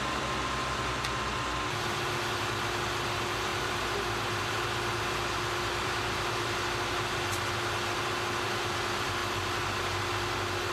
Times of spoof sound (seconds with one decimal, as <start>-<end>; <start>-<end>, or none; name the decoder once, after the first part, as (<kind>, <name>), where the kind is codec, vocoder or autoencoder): none